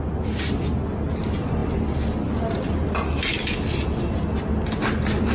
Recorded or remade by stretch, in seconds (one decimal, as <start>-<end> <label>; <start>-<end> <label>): 0.0-5.3 recorded